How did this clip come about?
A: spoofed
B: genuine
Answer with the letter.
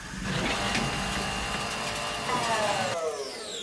B